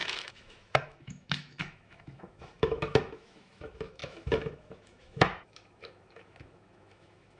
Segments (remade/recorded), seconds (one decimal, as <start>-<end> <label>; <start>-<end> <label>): 0.0-7.4 remade